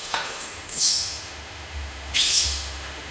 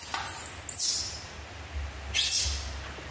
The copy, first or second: first